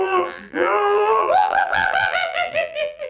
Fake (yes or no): yes